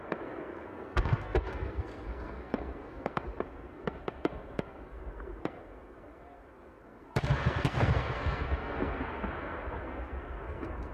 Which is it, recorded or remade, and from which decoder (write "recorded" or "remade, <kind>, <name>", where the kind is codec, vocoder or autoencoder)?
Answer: remade, codec, SNAC